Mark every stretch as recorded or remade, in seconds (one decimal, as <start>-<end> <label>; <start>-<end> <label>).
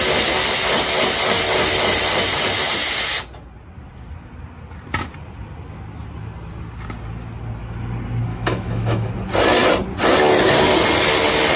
0.0-8.3 recorded; 8.3-9.1 remade; 9.1-11.6 recorded